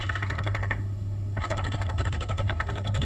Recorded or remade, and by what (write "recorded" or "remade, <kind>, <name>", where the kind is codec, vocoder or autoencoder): remade, codec, SNAC